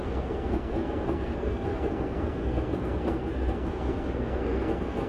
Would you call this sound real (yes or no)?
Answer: no